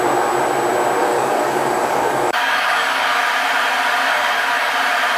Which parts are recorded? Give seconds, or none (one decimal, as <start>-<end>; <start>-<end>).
0.0-1.0; 3.2-4.1; 4.7-5.2